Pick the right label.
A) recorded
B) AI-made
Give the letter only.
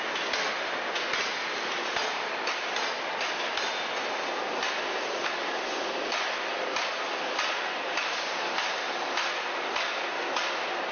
A